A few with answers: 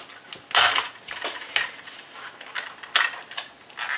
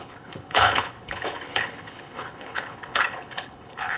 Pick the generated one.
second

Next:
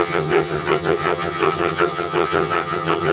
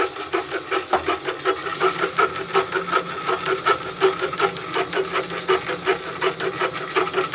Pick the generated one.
first